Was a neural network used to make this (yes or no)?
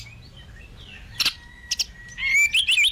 no